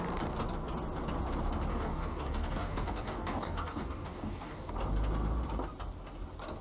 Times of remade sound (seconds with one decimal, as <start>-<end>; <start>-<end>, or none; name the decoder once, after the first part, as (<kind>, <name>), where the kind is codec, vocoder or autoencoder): 1.7-4.7 (codec, DAC)